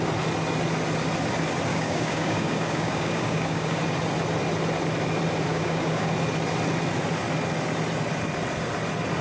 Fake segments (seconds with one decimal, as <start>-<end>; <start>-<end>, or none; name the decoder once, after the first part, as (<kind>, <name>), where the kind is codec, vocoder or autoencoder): 1.7-3.8 (codec, DAC); 5.5-6.1